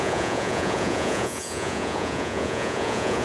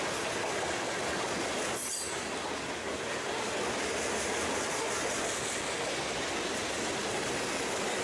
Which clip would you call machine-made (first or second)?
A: first